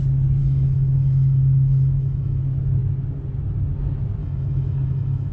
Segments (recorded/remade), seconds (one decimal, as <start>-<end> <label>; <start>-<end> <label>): 0.0-0.4 recorded; 0.4-2.4 remade; 2.4-4.2 recorded; 4.2-5.3 remade